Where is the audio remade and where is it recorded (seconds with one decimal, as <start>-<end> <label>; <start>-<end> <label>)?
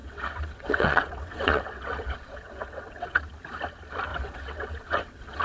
0.0-3.2 remade; 3.2-4.1 recorded; 4.1-5.4 remade